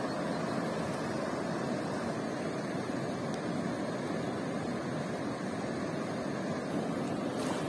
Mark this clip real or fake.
real